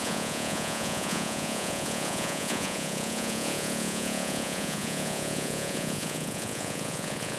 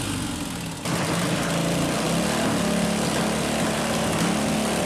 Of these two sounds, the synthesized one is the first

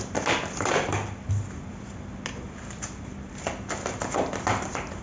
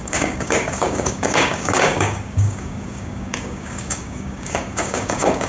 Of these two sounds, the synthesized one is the second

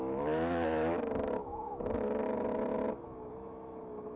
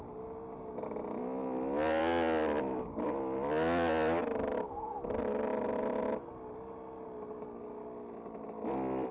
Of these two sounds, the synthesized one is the first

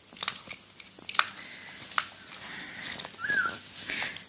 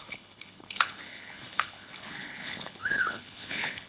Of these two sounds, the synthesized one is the second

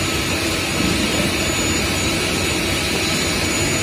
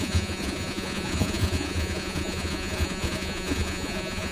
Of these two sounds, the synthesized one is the second